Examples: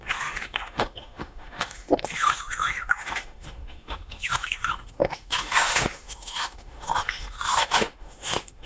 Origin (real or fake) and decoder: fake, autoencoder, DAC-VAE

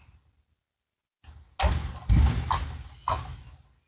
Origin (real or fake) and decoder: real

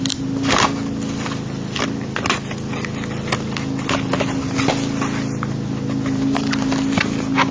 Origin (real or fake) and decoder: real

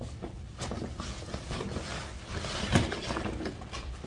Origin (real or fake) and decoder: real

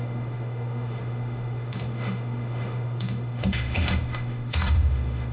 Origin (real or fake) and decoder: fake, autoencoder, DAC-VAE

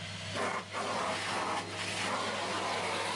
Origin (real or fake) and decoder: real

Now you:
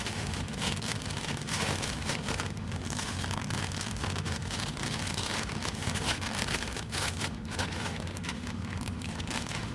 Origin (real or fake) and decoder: fake, autoencoder, DAC-VAE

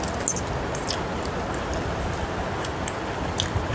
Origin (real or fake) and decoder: real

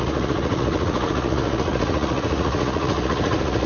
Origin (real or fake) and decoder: fake, vocoder, Vocos